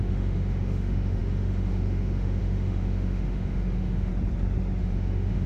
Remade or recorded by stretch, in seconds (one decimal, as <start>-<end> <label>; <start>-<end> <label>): 0.0-4.1 remade; 4.1-4.8 recorded; 4.8-5.5 remade